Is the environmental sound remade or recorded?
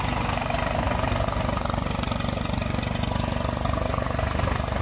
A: recorded